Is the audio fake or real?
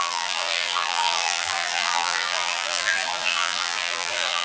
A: fake